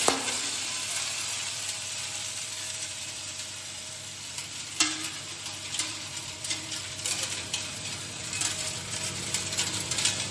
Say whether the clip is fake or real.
fake